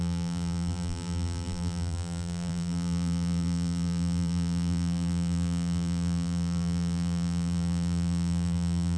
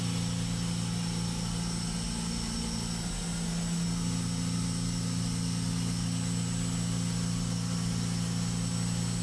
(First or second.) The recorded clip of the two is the second